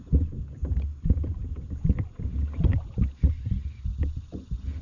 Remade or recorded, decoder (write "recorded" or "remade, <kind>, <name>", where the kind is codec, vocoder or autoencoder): recorded